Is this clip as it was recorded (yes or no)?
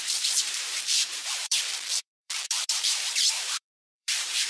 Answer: no